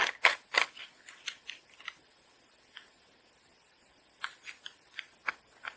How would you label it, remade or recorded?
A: recorded